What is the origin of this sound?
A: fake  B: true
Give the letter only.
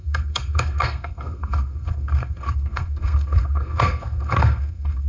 A